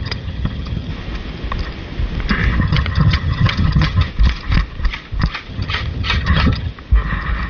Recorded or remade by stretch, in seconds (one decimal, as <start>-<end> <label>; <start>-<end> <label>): 0.0-0.9 remade; 0.9-2.6 recorded; 2.6-4.1 remade; 4.1-5.5 recorded; 5.5-6.7 remade; 6.7-7.5 recorded